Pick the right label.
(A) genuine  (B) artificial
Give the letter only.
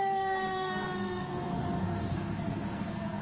B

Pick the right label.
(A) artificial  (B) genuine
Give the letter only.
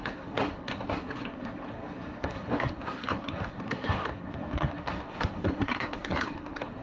A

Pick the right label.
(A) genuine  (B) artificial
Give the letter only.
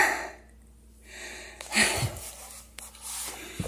A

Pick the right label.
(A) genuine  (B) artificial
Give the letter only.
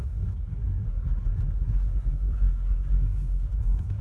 B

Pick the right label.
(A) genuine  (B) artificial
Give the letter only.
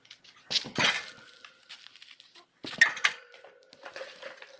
A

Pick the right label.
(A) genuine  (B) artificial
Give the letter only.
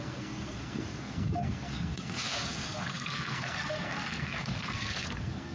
B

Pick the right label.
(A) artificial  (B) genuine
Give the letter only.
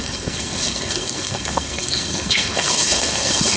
A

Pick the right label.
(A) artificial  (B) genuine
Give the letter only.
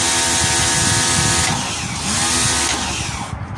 B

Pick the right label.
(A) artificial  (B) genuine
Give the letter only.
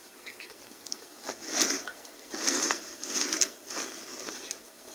A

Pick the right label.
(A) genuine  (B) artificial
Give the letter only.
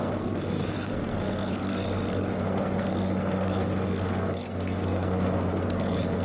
B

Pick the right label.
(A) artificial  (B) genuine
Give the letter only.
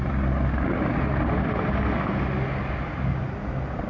B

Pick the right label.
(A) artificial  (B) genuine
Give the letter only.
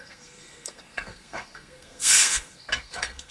A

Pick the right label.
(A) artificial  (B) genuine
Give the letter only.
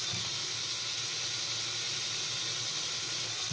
B